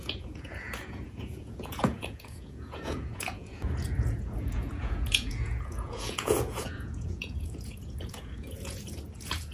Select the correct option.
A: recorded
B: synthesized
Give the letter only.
B